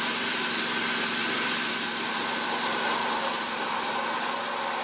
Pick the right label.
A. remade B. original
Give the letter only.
B